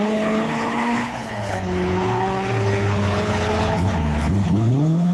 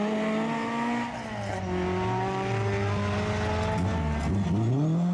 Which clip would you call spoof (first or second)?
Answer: first